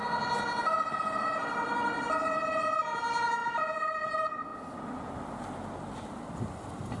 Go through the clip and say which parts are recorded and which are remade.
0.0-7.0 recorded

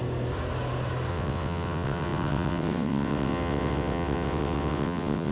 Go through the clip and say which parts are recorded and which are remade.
0.0-1.1 recorded; 1.1-5.3 remade

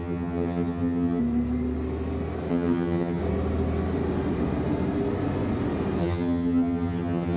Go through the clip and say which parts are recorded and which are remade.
0.0-1.2 remade; 1.2-2.5 recorded; 2.5-3.2 remade; 3.2-6.0 recorded; 6.0-7.4 remade

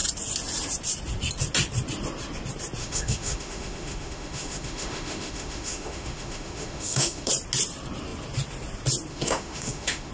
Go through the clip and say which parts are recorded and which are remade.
0.0-2.8 recorded; 2.8-7.3 remade; 7.3-9.1 recorded; 9.1-10.1 remade

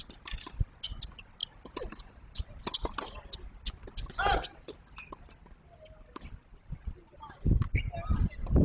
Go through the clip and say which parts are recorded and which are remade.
0.0-8.6 recorded

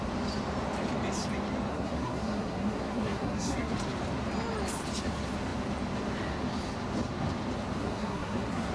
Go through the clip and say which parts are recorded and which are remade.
0.0-1.7 recorded; 1.7-3.7 remade; 3.7-7.8 recorded; 7.8-8.7 remade